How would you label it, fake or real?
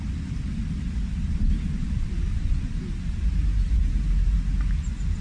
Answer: real